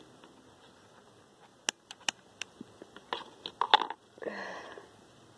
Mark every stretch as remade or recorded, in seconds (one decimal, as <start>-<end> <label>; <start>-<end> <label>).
0.0-5.4 recorded